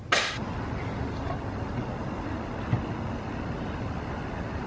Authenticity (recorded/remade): recorded